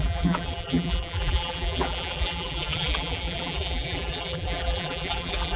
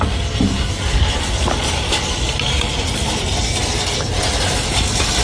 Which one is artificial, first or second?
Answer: first